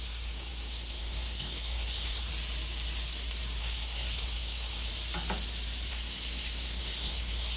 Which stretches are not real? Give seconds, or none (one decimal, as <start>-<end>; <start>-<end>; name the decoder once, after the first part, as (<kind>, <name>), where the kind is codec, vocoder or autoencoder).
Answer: 0.0-2.3 (codec, SNAC); 3.6-4.9; 5.9-7.6